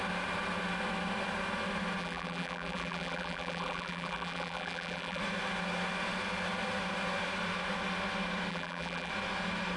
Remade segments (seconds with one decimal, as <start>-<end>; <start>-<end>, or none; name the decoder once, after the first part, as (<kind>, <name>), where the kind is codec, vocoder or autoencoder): 2.0-5.2 (vocoder, BigVGAN v2); 8.5-9.1